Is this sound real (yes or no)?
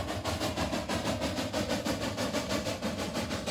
yes